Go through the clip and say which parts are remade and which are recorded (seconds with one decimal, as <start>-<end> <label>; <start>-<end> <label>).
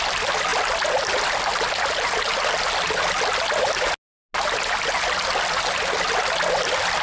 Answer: 0.0-7.0 recorded